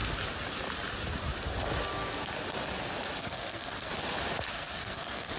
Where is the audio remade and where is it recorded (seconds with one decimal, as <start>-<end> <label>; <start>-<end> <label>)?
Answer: 0.0-3.2 recorded; 3.2-3.9 remade; 3.9-4.5 recorded; 4.5-5.4 remade